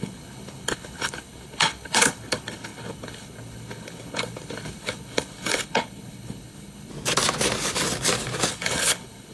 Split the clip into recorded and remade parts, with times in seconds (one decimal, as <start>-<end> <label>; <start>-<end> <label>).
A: 0.0-6.9 remade; 6.9-8.5 recorded; 8.5-9.3 remade